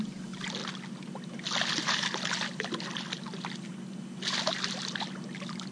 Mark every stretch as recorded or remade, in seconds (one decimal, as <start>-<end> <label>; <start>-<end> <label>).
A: 0.0-5.7 recorded